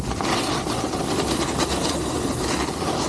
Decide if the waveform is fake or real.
real